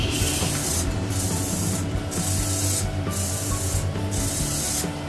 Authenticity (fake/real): real